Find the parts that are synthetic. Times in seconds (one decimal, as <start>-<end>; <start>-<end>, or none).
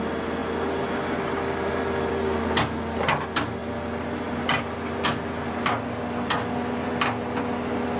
none